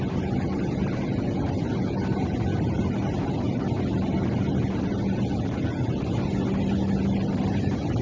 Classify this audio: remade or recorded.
recorded